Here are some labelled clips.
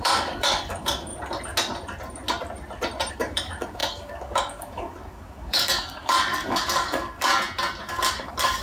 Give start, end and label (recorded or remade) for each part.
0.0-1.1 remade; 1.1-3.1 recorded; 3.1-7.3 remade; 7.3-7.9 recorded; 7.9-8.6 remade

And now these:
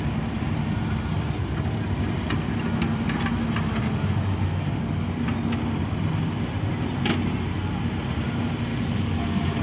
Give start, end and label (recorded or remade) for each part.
0.0-8.7 recorded; 8.7-9.2 remade; 9.2-9.6 recorded